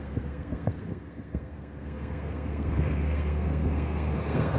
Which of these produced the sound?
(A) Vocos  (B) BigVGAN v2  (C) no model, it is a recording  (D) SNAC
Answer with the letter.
D